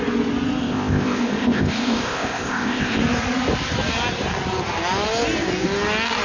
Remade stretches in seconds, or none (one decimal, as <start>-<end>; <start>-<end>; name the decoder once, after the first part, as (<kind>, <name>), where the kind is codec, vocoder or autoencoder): 0.6-3.0 (codec, ZipCodec)